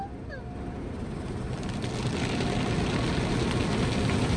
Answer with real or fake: real